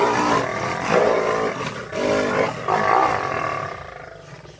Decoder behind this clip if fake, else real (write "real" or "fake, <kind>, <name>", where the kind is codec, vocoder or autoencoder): real